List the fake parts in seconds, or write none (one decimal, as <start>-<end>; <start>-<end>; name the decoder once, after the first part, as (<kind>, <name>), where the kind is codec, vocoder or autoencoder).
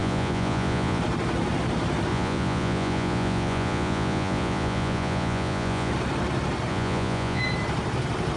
0.0-1.0 (vocoder, Vocos); 2.1-5.9; 6.7-7.4